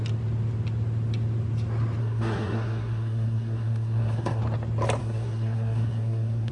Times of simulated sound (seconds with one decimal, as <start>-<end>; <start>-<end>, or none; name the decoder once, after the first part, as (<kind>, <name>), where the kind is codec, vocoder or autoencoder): 2.0-4.4 (codec, SNAC); 5.0-6.5